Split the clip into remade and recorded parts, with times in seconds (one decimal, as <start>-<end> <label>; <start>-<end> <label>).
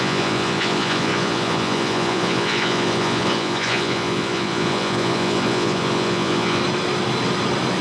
0.0-6.6 remade; 6.6-7.8 recorded